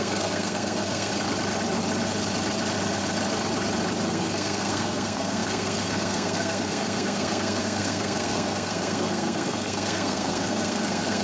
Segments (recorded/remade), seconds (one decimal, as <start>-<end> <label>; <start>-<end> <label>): 0.0-1.1 remade; 1.1-4.1 recorded; 4.1-11.2 remade